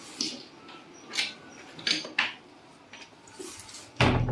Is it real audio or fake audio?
real